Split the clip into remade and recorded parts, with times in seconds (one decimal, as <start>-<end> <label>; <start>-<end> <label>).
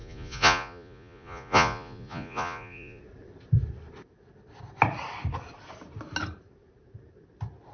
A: 0.0-3.0 remade; 3.0-7.7 recorded